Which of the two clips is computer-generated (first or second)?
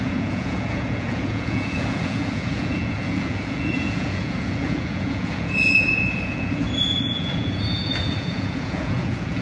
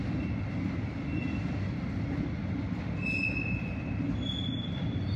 first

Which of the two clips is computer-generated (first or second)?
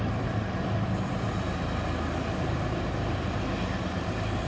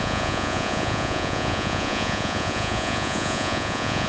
second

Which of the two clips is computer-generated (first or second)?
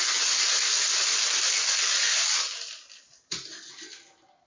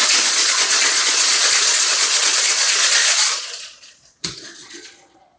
second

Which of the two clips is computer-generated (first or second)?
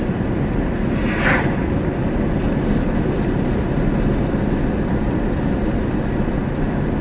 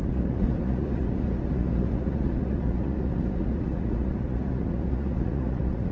second